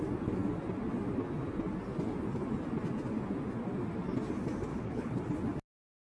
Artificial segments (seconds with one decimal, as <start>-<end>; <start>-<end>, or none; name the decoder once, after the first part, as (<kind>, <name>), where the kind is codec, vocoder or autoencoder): 4.7-5.2 (codec, HILCodec)